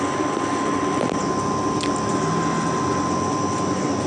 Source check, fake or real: real